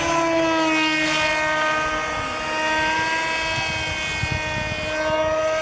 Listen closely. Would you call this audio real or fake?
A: real